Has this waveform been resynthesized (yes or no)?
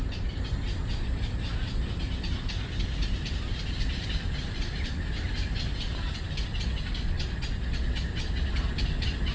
no